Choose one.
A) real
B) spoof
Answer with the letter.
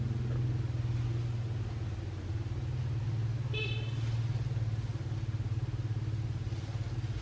A